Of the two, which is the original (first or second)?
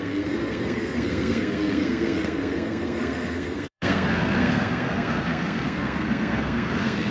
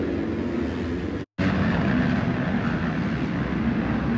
second